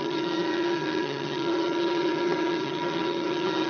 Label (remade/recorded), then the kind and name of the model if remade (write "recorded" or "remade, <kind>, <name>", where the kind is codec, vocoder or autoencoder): remade, vocoder, HiFi-GAN